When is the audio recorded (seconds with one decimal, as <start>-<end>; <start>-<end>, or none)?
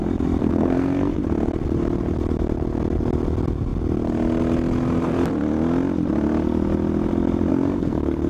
0.0-0.4; 1.2-7.5